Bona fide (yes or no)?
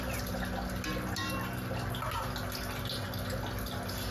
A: yes